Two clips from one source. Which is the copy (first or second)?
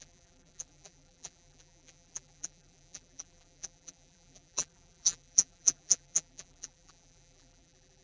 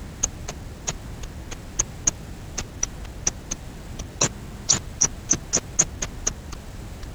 first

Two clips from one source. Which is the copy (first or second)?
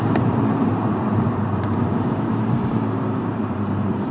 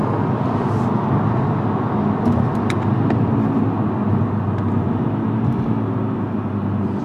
first